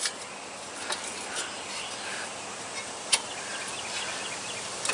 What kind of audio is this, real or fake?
real